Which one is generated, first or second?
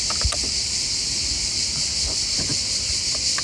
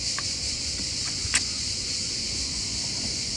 second